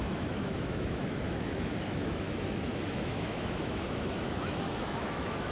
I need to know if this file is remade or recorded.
remade